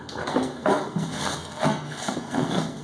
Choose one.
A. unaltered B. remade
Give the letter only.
B